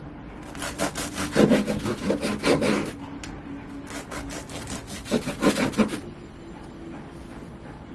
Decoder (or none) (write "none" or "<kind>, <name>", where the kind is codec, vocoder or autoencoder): none